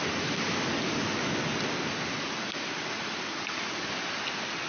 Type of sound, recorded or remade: recorded